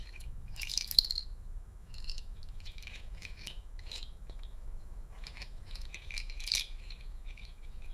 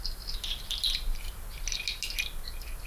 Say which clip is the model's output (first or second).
first